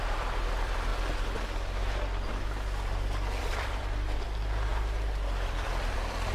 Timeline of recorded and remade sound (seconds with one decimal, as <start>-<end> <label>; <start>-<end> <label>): 0.0-0.9 remade; 0.9-3.4 recorded; 3.4-6.3 remade